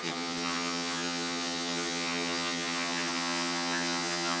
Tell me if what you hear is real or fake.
fake